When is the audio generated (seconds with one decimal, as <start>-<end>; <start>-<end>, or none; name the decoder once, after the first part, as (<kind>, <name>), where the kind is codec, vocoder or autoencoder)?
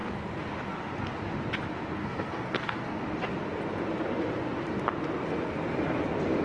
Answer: 2.0-3.0 (codec, SNAC)